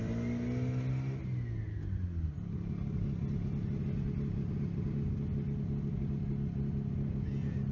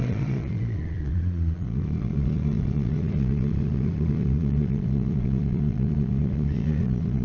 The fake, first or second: second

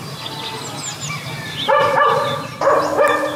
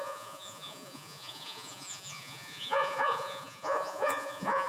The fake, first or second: second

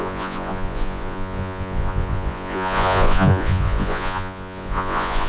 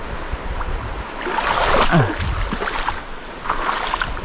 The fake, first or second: first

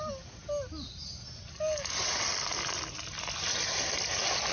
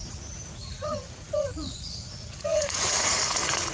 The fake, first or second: second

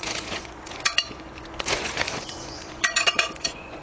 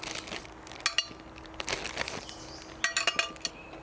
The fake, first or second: first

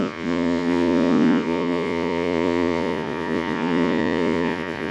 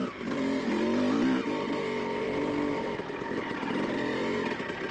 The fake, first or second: first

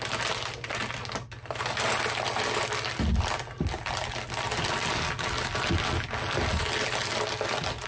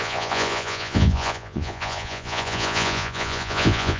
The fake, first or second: second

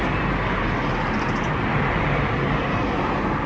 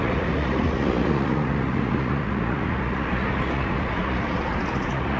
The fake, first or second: second